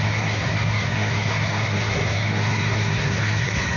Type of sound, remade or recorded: remade